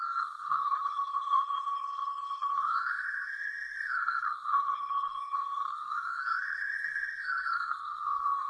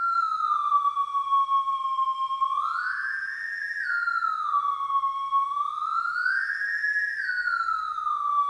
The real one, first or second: second